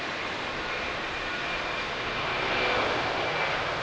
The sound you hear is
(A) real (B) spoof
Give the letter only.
A